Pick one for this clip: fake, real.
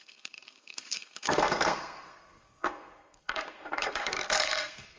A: fake